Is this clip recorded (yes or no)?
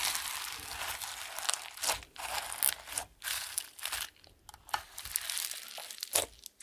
yes